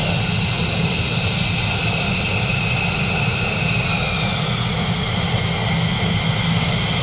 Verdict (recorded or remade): recorded